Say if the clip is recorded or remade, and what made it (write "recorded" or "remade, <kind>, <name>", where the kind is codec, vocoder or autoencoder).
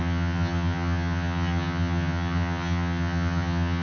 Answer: remade, vocoder, HiFi-GAN